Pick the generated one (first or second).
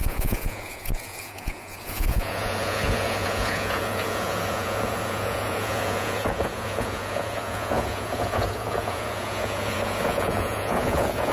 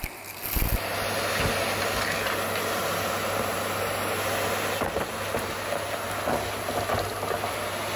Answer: first